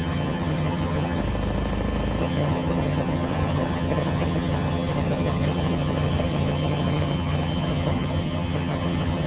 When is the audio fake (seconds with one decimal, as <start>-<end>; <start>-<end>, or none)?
0.0-1.2; 2.2-9.3